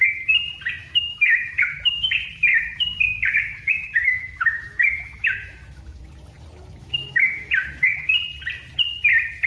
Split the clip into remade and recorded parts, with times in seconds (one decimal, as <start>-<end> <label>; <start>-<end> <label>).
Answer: 0.0-0.8 recorded; 0.8-2.1 remade; 2.1-2.5 recorded; 2.5-6.0 remade; 6.0-6.8 recorded; 6.8-8.1 remade; 8.1-9.5 recorded

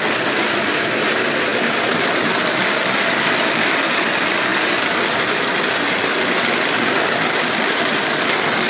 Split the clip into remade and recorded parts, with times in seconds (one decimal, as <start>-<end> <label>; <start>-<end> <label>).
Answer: 0.0-8.7 recorded

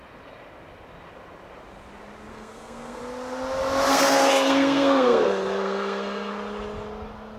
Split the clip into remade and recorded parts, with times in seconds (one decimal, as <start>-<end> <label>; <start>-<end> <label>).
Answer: 0.0-2.3 recorded; 2.3-3.0 remade; 3.0-3.9 recorded; 3.9-6.3 remade; 6.3-7.4 recorded

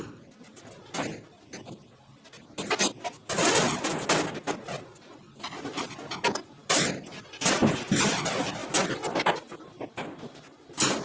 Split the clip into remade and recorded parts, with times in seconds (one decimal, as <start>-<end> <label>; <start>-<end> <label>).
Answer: 0.0-11.0 recorded